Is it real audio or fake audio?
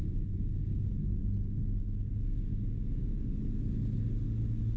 real